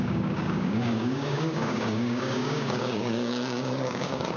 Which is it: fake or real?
fake